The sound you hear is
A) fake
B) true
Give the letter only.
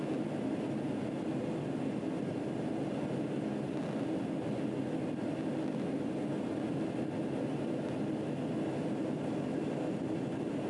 B